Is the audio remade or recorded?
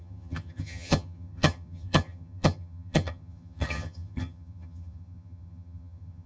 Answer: remade